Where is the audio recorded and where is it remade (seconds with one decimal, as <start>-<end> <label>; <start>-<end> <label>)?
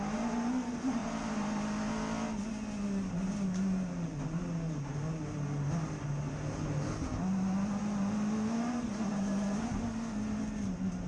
0.0-11.1 recorded